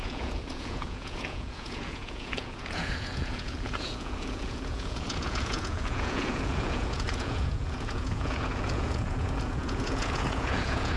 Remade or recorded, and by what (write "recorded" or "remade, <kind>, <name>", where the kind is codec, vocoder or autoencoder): remade, vocoder, Vocos